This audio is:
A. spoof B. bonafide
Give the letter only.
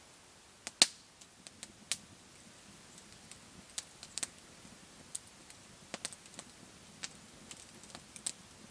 B